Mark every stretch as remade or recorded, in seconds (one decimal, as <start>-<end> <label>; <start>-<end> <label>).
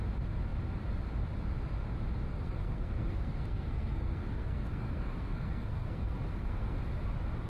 0.0-2.3 recorded; 2.3-6.8 remade; 6.8-7.5 recorded